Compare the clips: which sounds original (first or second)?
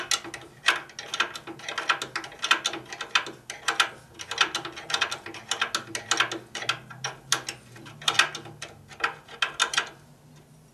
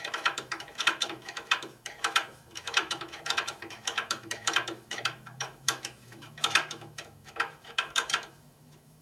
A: first